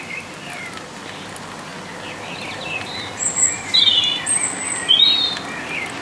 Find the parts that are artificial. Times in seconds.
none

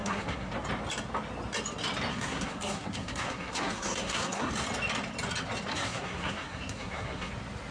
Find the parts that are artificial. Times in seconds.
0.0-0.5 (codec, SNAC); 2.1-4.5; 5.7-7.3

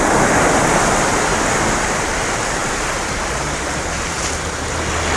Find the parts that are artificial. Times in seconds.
none

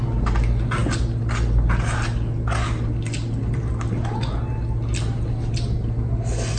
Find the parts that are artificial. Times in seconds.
none